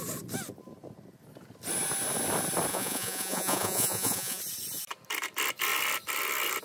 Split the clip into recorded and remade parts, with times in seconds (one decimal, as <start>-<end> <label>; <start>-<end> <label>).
0.0-2.7 recorded; 2.7-4.4 remade; 4.4-6.6 recorded